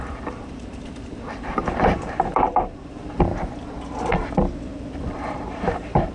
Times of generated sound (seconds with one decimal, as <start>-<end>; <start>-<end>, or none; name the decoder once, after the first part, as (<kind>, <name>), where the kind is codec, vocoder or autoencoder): 0.0-3.3 (vocoder, BigVGAN v2); 4.6-6.1